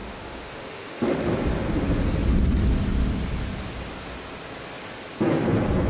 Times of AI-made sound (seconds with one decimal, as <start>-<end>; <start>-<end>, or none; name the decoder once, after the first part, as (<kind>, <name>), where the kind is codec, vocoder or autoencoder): 0.0-1.3 (autoencoder, DAC-VAE)